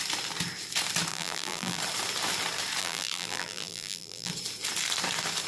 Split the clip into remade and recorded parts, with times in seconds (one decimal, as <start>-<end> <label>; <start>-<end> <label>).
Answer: 0.0-1.1 recorded; 1.1-1.8 remade; 1.8-2.8 recorded; 2.8-4.3 remade; 4.3-5.5 recorded